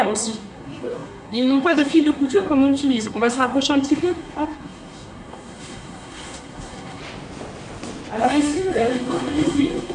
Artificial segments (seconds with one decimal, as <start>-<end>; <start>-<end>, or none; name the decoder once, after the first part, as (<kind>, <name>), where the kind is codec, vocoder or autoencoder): 0.0-7.0 (codec, SNAC); 8.2-9.9